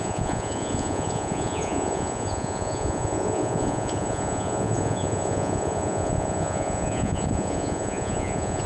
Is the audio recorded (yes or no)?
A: no